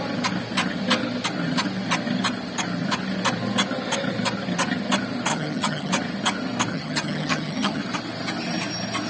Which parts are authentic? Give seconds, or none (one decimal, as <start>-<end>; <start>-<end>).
0.0-5.3; 5.9-6.7; 7.8-9.1